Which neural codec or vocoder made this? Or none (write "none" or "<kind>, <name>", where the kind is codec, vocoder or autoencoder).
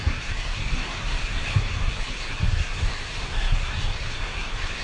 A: codec, SNAC